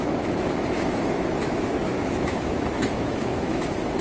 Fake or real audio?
fake